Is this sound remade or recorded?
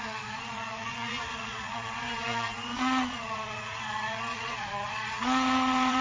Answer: remade